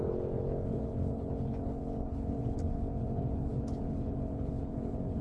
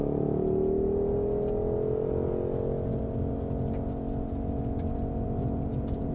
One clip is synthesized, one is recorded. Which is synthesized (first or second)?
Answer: first